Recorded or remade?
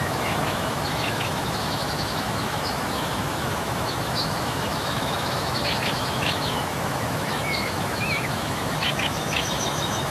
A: remade